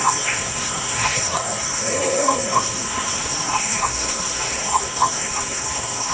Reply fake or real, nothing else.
fake